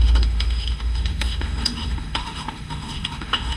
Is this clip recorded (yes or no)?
no